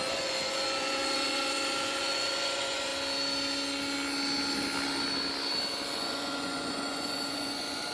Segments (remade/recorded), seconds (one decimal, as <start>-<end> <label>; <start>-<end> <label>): 0.0-2.9 remade; 2.9-5.9 recorded; 5.9-7.9 remade